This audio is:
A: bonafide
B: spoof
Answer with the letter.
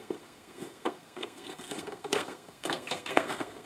B